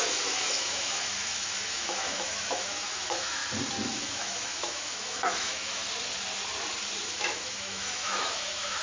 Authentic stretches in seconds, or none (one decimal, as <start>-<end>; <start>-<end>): 3.4-3.9; 5.8-7.1